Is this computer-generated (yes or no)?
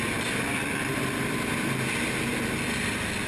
no